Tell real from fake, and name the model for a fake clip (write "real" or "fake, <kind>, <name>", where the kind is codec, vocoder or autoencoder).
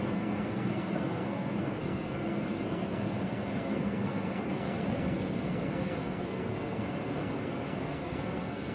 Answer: fake, codec, SNAC